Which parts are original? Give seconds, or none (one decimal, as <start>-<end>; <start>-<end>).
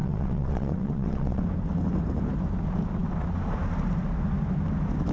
1.4-5.1